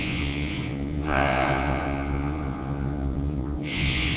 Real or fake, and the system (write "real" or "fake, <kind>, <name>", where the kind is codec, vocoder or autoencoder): fake, vocoder, Vocos